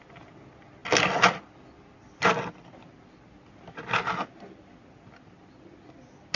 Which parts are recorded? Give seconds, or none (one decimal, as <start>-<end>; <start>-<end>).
0.0-6.4

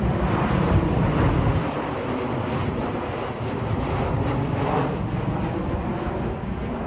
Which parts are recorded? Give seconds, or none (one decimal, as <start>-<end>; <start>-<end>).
0.0-6.9